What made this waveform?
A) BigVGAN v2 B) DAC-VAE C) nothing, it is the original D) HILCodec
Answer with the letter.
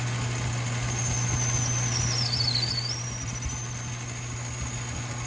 C